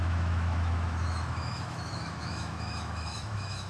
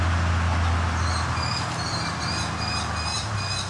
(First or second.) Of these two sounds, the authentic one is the second